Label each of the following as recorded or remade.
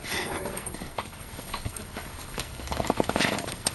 remade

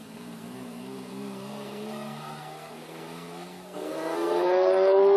remade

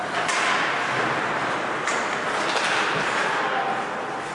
recorded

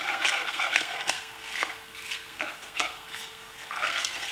remade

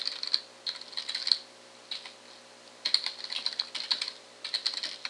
recorded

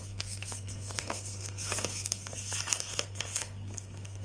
remade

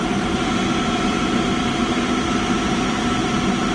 recorded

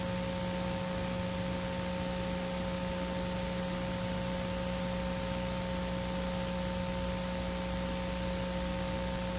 recorded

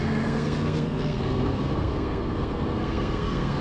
remade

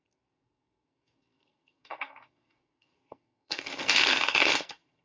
remade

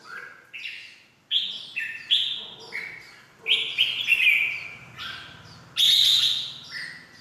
recorded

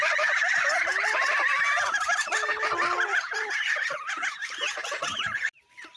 recorded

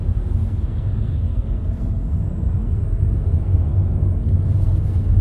remade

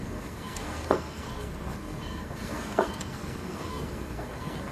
remade